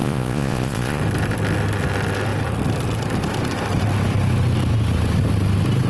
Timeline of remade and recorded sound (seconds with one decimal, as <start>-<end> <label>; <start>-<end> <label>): 0.0-1.0 remade; 1.0-5.9 recorded